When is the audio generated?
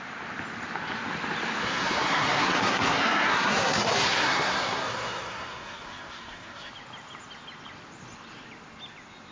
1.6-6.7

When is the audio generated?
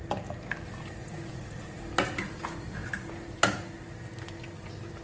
1.0-1.8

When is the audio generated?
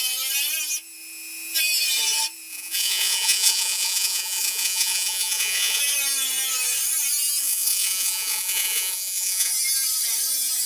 2.5-5.8; 7.4-9.5